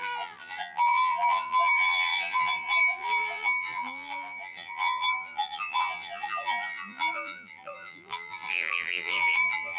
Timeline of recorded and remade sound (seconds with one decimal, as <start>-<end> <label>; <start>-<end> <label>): 0.0-9.8 remade